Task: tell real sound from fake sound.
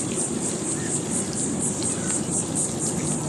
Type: real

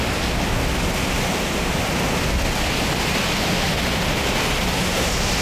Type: real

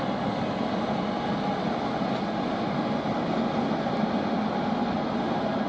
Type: real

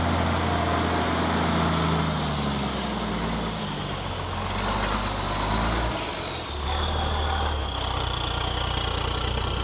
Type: real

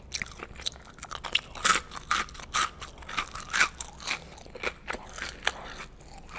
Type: real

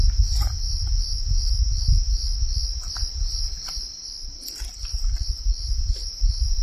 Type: real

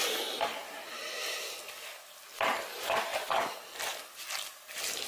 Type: real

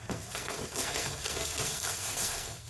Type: fake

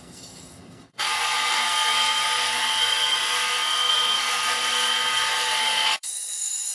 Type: fake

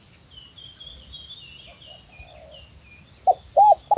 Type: real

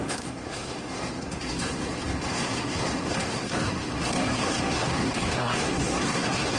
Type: fake